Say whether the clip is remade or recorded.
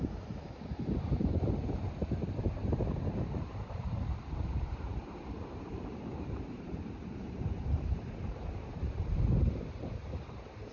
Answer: remade